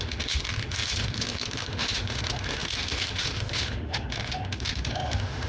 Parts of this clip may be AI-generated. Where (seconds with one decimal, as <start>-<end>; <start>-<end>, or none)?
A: 0.0-5.5